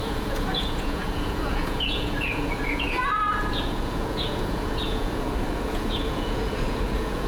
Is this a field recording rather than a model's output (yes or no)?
no